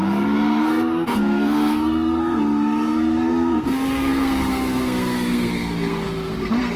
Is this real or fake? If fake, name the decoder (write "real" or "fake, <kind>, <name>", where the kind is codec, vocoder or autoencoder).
fake, codec, SNAC